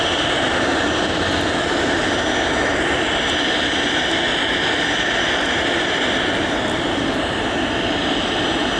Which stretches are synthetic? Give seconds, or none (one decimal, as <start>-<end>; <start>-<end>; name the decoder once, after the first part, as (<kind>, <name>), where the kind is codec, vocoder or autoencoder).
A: 4.3-7.4 (vocoder, BigVGAN v2)